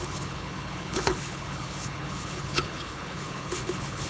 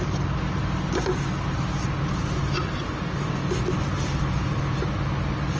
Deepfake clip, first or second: first